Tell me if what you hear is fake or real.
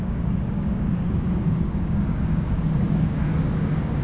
fake